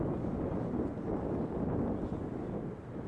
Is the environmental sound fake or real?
real